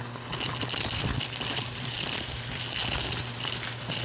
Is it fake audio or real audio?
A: real